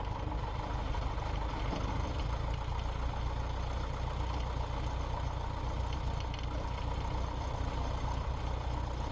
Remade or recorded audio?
recorded